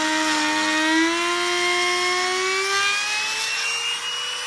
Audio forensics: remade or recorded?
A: recorded